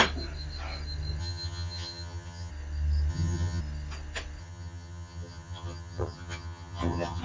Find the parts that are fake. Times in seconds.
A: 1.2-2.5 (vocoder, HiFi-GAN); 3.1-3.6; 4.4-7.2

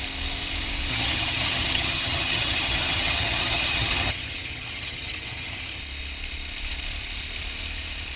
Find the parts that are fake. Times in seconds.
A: 0.9-5.8 (vocoder, HiFi-GAN)

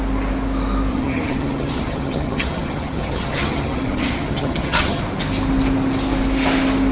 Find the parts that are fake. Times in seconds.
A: 0.9-5.0 (vocoder, HiFi-GAN)